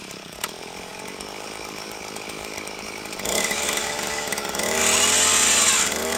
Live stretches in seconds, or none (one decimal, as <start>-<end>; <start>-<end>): 4.8-5.8